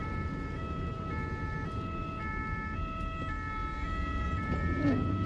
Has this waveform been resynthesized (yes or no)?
no